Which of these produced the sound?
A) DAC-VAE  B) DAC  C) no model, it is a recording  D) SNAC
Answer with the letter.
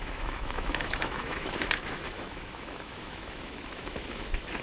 A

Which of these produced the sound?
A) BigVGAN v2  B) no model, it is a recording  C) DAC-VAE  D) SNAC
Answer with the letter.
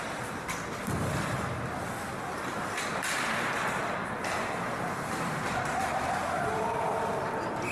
B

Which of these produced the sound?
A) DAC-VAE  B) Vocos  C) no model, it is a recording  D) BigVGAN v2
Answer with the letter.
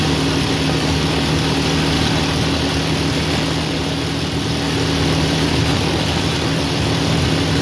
C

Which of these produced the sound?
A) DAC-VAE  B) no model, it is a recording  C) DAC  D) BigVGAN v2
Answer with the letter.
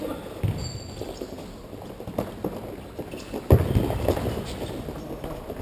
B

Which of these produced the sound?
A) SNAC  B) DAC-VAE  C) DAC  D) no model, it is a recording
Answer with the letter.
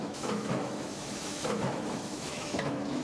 B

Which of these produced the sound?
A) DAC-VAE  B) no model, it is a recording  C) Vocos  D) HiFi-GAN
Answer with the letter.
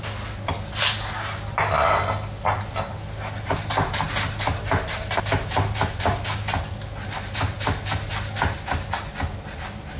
B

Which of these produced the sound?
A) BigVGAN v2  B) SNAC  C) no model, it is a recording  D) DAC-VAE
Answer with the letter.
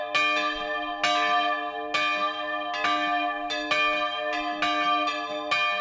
C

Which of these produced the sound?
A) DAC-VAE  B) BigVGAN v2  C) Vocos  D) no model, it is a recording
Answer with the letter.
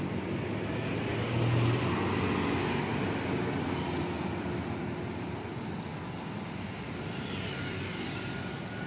D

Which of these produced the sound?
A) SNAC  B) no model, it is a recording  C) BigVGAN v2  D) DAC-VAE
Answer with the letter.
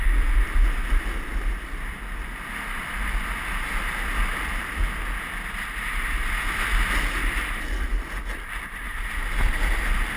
B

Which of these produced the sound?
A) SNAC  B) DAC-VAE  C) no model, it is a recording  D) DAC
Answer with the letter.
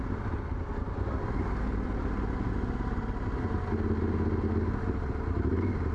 C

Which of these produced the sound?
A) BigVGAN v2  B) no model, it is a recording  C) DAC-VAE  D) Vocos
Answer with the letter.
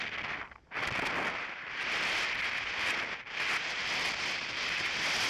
B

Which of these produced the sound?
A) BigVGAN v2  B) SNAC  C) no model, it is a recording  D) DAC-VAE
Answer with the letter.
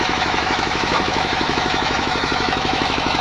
D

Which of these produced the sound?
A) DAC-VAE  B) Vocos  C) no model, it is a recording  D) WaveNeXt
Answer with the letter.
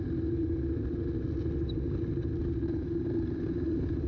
C